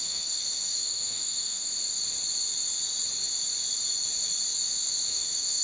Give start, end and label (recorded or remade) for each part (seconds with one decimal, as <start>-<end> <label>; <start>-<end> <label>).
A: 0.0-1.7 remade; 1.7-5.1 recorded; 5.1-5.6 remade